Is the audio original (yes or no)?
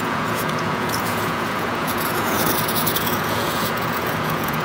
no